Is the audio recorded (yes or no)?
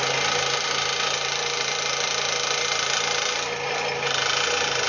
yes